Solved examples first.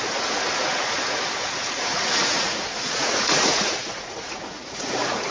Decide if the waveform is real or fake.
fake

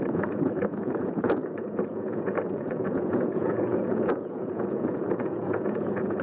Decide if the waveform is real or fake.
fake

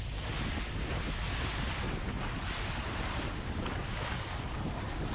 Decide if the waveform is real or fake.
real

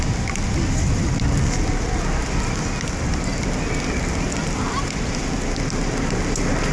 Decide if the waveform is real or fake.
real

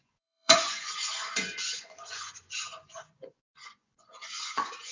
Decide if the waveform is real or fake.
fake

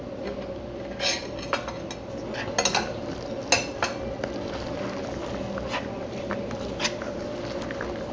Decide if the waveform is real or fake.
real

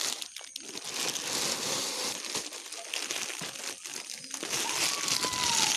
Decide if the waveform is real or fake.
real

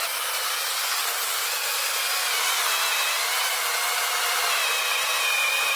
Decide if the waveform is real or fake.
real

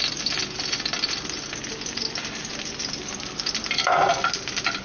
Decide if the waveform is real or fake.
real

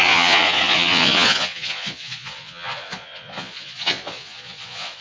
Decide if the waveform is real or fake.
fake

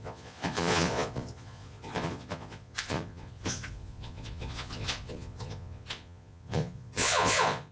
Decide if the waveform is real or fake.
fake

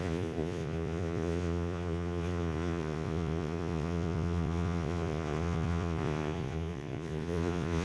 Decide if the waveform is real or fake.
fake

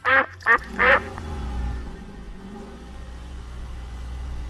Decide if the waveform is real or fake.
fake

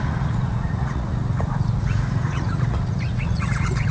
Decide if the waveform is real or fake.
fake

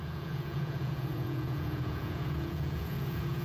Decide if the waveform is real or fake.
fake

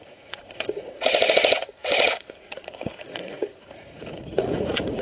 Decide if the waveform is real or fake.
fake